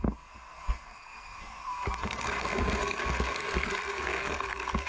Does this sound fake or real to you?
fake